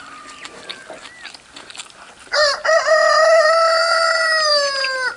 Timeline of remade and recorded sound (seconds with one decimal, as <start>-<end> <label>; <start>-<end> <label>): 0.0-5.2 recorded